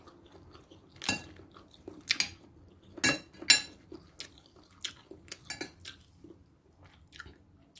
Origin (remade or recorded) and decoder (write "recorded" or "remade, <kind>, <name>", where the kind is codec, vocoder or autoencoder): recorded